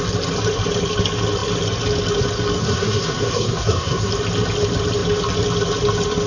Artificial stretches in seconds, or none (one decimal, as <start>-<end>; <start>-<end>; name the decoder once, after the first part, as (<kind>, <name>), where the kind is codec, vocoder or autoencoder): 2.6-4.1 (codec, SNAC)